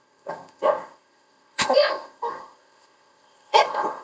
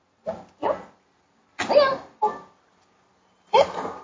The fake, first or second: first